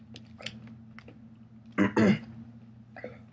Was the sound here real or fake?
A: real